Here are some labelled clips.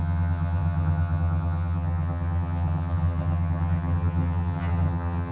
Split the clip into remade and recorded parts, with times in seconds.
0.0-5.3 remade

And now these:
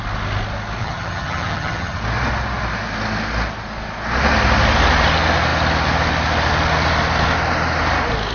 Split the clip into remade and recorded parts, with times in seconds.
0.0-0.8 recorded; 0.8-2.0 remade; 2.0-8.3 recorded

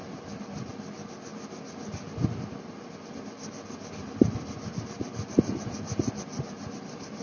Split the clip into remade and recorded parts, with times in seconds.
0.0-7.2 recorded

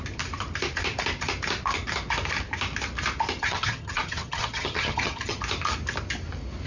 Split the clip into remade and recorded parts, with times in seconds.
0.0-3.4 recorded; 3.4-5.4 remade; 5.4-6.7 recorded

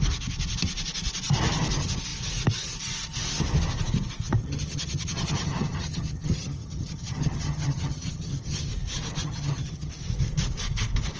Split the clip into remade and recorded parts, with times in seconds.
0.0-4.4 recorded; 4.4-8.7 remade; 8.7-9.2 recorded; 9.2-9.9 remade; 9.9-11.2 recorded

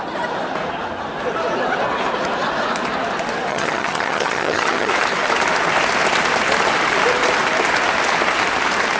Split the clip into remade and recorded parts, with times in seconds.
0.0-3.5 recorded; 3.5-4.9 remade; 4.9-9.0 recorded

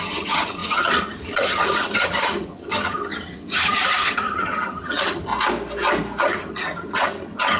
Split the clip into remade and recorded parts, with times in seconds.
0.0-5.3 remade; 5.3-6.2 recorded; 6.2-7.6 remade

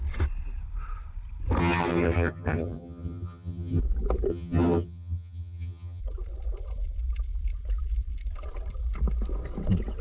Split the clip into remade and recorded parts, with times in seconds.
0.0-1.6 recorded; 1.6-3.8 remade; 3.8-4.3 recorded; 4.3-6.0 remade; 6.0-10.0 recorded